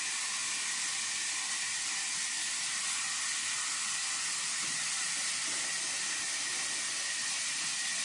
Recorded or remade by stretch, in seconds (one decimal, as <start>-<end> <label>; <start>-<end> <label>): 0.0-8.0 recorded